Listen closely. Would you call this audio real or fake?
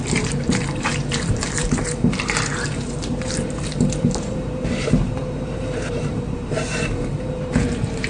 fake